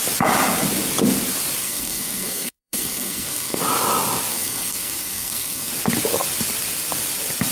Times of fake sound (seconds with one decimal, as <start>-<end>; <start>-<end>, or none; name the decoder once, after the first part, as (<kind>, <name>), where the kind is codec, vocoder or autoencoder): 1.6-3.6 (codec, SNAC); 4.3-5.7